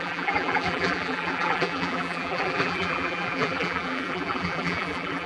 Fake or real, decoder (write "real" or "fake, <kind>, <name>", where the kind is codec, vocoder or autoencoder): fake, vocoder, BigVGAN v2